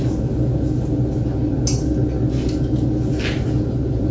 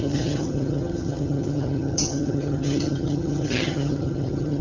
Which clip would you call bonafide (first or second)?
first